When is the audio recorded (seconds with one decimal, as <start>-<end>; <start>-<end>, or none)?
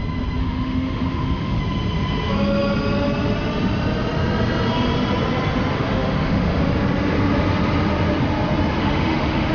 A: 0.0-0.4; 1.6-5.7; 6.6-8.8